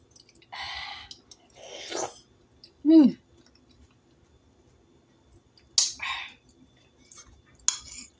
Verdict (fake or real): real